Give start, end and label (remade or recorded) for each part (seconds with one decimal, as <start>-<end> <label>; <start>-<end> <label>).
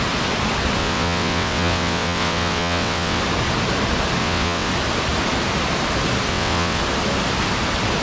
0.0-0.8 recorded; 0.8-3.2 remade; 3.2-4.2 recorded; 4.2-4.7 remade; 4.7-6.3 recorded; 6.3-6.8 remade; 6.8-8.0 recorded